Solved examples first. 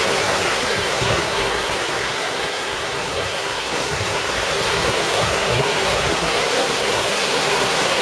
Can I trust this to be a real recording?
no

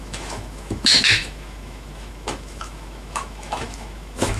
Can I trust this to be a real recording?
no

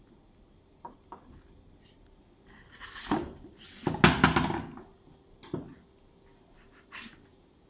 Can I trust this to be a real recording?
yes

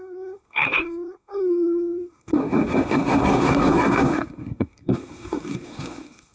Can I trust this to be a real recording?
no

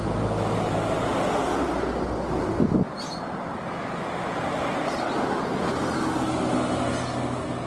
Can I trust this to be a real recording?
yes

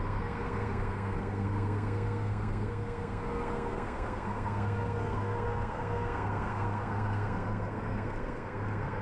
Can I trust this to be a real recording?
no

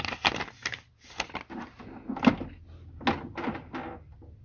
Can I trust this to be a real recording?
yes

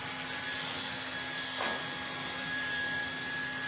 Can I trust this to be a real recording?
yes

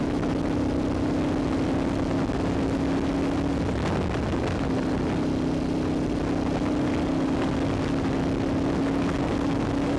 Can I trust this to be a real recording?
yes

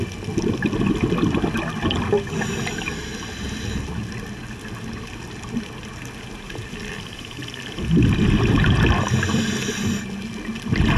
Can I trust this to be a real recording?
yes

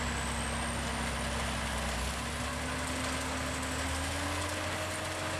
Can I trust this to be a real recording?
yes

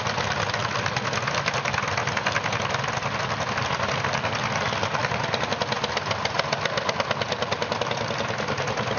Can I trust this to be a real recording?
yes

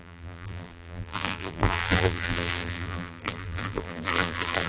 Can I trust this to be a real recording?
no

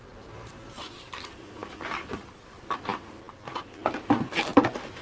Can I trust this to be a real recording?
yes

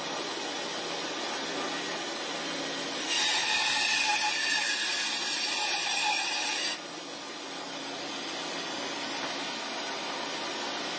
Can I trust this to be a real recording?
yes